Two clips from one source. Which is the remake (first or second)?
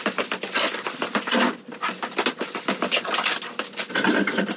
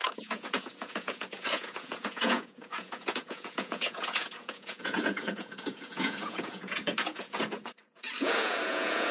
second